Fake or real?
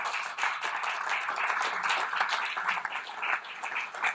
real